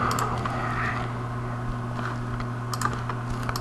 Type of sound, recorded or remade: recorded